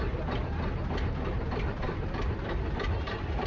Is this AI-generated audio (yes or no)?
no